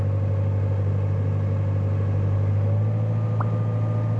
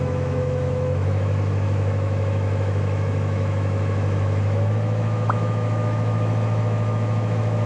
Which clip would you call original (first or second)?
first